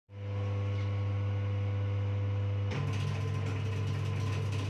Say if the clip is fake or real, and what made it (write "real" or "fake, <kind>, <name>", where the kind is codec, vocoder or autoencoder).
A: real